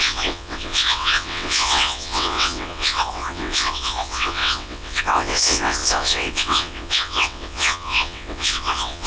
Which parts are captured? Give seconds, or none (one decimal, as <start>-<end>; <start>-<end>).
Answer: none